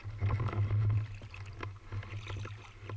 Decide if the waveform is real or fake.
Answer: real